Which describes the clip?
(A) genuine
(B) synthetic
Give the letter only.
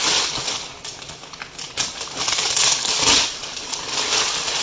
A